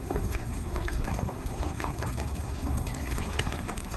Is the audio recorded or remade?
remade